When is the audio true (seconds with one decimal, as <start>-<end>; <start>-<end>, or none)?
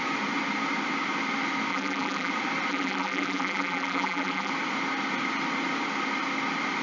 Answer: 0.0-1.7; 2.3-2.7; 4.5-6.8